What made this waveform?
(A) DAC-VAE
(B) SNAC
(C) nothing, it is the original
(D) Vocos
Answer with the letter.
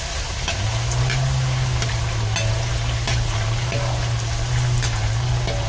C